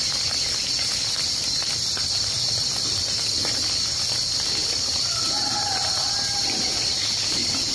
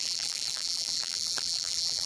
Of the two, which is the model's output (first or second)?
second